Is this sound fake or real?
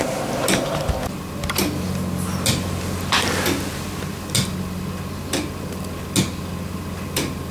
real